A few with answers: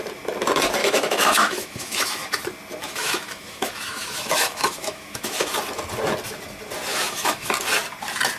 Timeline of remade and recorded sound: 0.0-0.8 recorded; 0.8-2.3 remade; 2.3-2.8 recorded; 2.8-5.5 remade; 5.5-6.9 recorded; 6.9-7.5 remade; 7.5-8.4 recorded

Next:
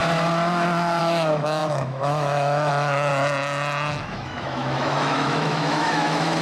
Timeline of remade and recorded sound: 0.0-1.0 recorded; 1.0-3.1 remade; 3.1-3.9 recorded; 3.9-6.4 remade

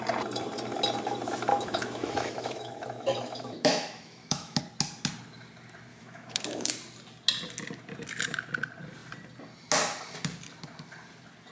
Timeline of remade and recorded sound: 0.0-1.5 recorded; 1.5-4.6 remade; 4.6-5.9 recorded; 5.9-6.7 remade; 6.7-11.5 recorded

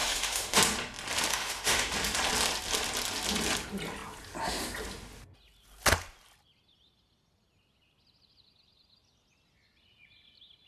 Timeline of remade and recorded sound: 0.0-0.6 remade; 0.6-1.3 recorded; 1.3-1.9 remade; 1.9-10.7 recorded

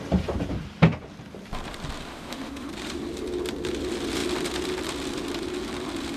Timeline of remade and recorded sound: 0.0-2.1 recorded; 2.1-2.7 remade; 2.7-6.2 recorded

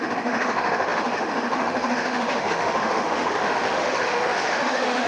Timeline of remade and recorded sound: 0.0-5.1 remade

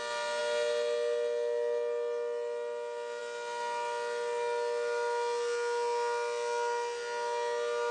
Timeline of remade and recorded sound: 0.0-7.9 recorded